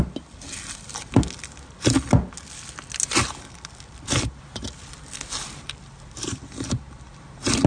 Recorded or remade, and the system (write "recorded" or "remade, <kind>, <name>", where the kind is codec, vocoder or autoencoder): recorded